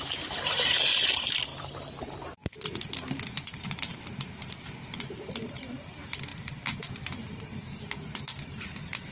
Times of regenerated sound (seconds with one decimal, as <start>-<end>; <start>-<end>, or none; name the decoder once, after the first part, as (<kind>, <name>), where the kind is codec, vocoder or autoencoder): 0.0-6.3 (vocoder, BigVGAN v2)